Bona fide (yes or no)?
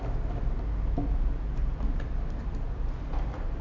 yes